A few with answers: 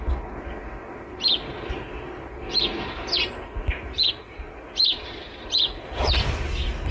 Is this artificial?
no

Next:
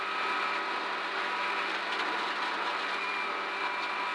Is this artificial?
no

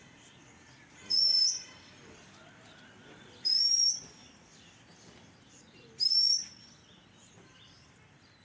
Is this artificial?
yes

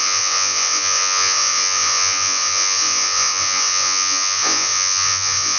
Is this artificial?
yes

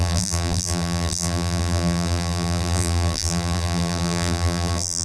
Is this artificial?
yes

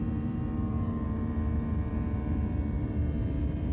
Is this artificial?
yes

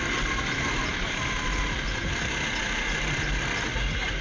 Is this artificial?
no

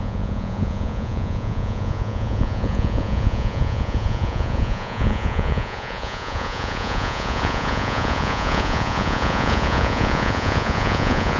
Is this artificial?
yes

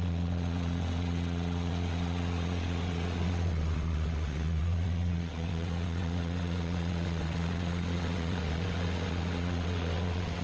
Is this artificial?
yes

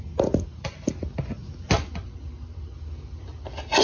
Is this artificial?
no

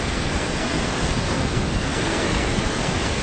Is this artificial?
yes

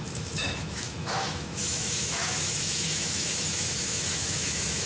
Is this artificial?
yes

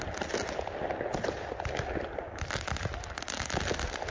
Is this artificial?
no